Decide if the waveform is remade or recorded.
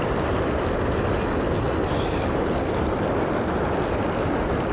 recorded